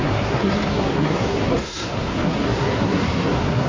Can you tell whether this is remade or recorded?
remade